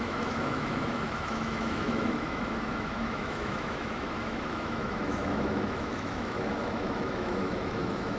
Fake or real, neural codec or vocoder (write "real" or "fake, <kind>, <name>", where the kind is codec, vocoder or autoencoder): fake, autoencoder, DAC-VAE